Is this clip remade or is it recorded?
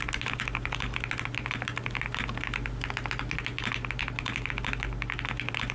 recorded